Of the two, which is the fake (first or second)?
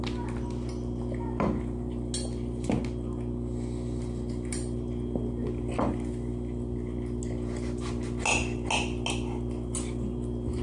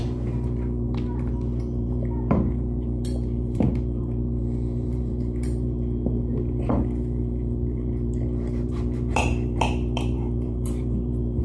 second